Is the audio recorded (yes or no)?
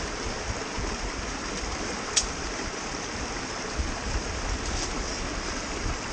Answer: yes